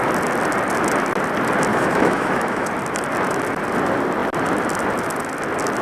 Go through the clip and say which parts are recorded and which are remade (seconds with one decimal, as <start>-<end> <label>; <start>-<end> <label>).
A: 0.0-1.7 recorded; 1.7-2.7 remade; 2.7-5.8 recorded